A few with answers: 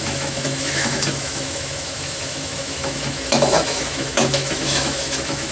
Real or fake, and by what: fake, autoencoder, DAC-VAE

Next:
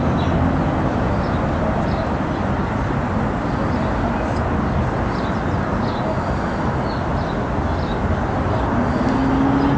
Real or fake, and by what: real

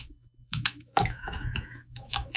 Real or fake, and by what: fake, autoencoder, DAC-VAE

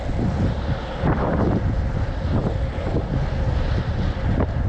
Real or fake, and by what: real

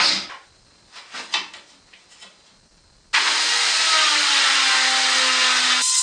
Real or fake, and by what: real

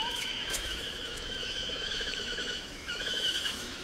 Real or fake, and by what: fake, autoencoder, DAC-VAE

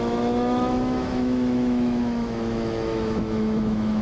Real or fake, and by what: fake, autoencoder, DAC-VAE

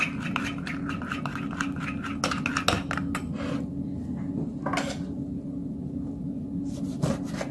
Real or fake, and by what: real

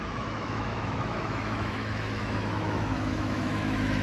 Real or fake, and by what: fake, autoencoder, DAC-VAE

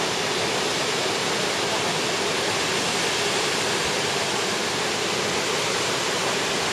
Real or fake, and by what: real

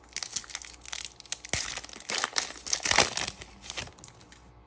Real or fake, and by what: real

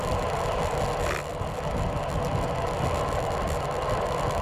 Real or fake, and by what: real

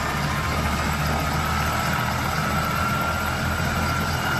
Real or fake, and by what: real